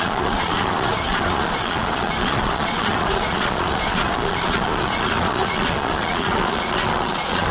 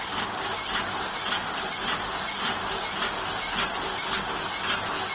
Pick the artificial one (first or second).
first